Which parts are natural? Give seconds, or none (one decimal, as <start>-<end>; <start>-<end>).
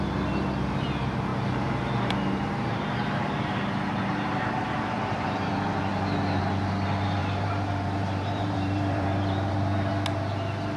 0.0-1.3; 5.5-7.2; 9.9-10.8